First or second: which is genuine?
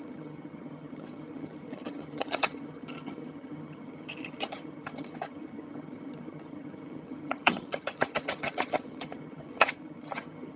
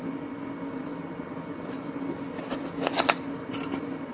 second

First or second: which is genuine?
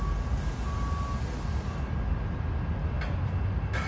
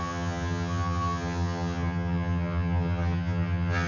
first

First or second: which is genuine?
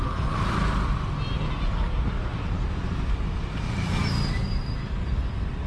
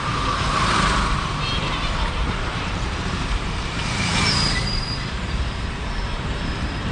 first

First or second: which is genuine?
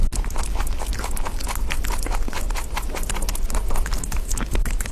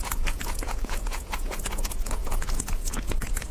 first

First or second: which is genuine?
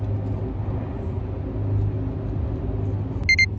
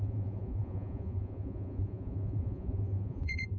first